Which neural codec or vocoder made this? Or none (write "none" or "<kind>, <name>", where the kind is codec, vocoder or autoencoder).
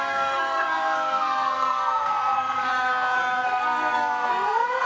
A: codec, SNAC